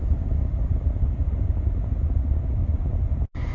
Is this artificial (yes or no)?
no